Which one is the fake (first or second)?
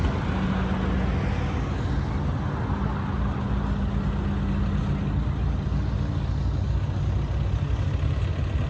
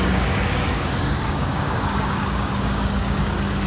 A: second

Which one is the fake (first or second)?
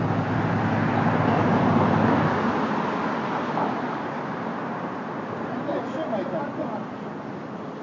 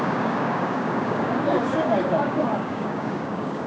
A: second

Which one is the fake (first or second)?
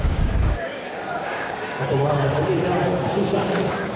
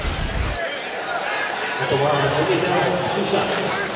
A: first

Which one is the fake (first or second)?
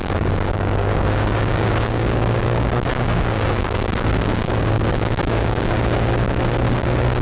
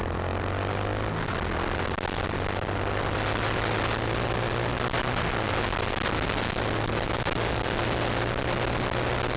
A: first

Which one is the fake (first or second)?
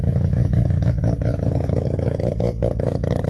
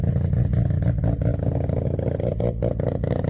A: first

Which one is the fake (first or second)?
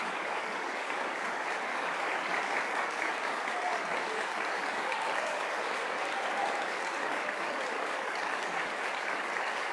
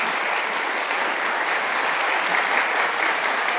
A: first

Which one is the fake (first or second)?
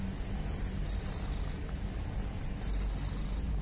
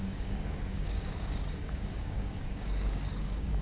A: second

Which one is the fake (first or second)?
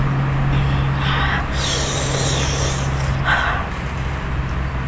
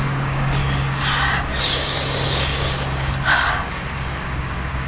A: second